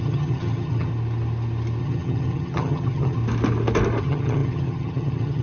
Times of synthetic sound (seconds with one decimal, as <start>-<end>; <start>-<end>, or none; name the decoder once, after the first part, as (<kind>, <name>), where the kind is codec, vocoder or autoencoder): 0.0-0.9 (vocoder, HiFi-GAN); 1.8-3.2; 4.0-5.4